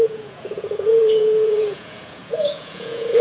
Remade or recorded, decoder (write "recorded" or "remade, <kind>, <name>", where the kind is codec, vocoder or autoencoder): remade, vocoder, Vocos